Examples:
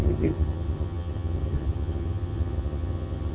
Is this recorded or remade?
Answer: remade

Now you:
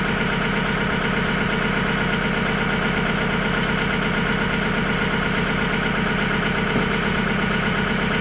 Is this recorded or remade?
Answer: recorded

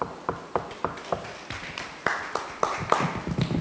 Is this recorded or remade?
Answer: recorded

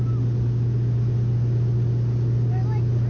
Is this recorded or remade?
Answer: recorded